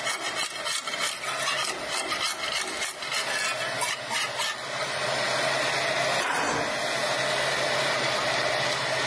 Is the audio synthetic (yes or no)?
no